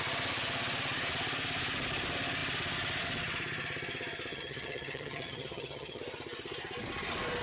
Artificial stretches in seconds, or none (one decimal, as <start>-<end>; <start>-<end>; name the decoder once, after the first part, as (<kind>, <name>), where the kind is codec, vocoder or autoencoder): 4.3-6.0 (vocoder, HiFi-GAN)